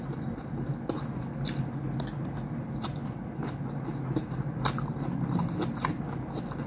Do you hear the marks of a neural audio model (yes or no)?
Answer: no